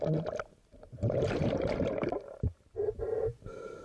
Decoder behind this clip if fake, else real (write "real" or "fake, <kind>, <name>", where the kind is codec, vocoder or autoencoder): fake, vocoder, BigVGAN v2